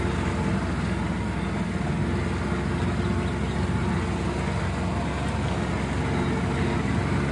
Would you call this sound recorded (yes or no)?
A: yes